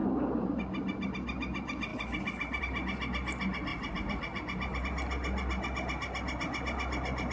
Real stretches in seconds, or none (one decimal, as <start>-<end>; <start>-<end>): 1.1-1.9; 2.6-3.7; 4.8-7.3